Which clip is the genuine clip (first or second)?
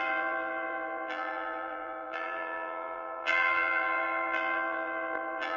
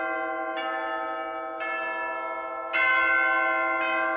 second